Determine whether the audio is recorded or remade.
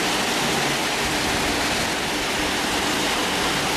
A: recorded